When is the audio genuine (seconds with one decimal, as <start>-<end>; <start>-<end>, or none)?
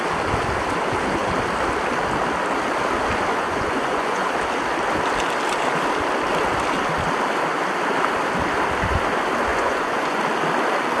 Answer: 0.0-3.3; 4.3-9.5; 10.2-11.0